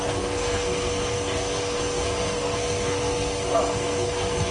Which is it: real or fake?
fake